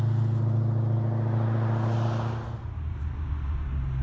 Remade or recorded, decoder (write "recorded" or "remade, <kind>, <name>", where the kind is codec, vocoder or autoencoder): recorded